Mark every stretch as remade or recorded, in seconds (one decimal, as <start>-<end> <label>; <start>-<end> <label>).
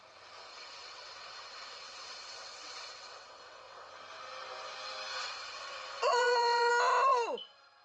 0.0-0.5 recorded; 0.5-3.9 remade; 3.9-5.1 recorded; 5.1-6.7 remade; 6.7-7.8 recorded